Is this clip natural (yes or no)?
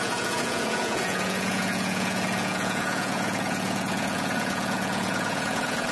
no